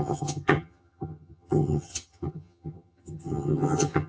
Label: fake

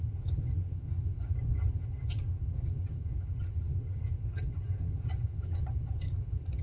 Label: fake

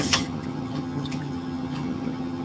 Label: fake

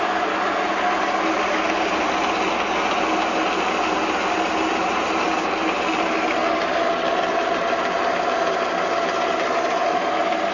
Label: real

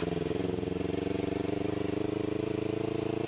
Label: real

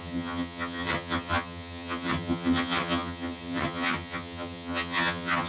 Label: fake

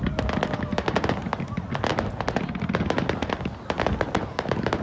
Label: real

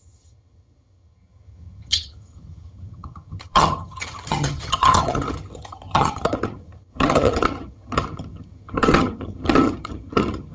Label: fake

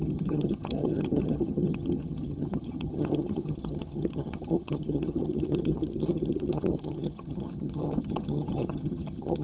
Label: fake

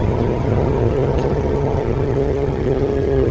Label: fake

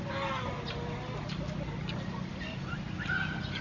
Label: real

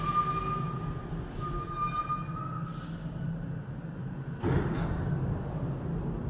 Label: real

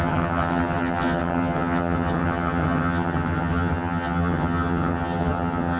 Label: fake